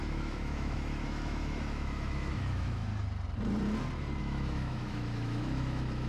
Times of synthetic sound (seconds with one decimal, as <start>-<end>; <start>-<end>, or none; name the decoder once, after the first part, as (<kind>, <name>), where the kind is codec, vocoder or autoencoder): 0.0-2.9 (autoencoder, DAC-VAE); 4.2-6.1